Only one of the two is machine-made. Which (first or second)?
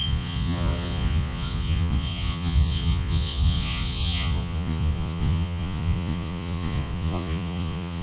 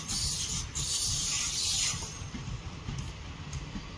first